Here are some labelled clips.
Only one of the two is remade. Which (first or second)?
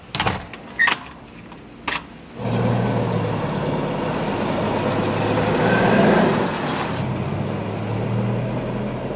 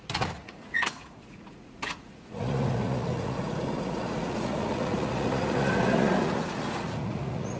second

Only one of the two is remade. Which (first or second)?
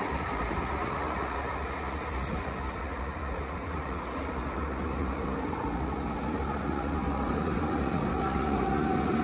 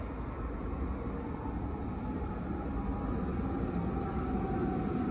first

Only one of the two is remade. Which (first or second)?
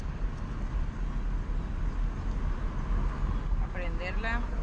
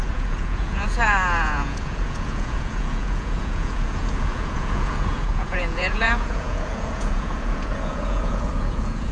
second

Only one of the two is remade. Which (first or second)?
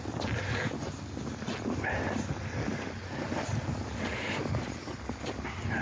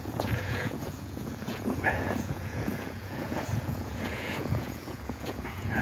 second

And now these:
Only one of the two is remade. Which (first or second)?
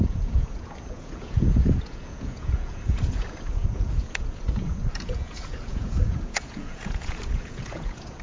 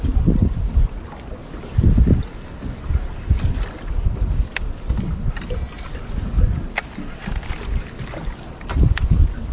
first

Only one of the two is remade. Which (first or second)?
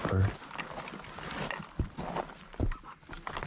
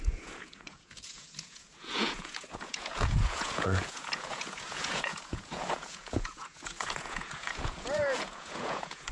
second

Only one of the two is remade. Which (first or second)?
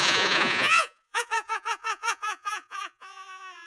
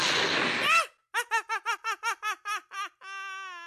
first